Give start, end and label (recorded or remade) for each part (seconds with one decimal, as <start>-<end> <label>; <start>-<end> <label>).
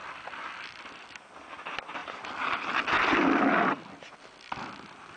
0.0-1.1 remade; 1.1-2.0 recorded; 2.0-4.2 remade; 4.2-5.2 recorded